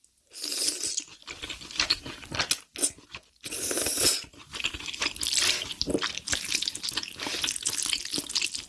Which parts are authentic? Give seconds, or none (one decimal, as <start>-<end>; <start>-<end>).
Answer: 0.0-8.7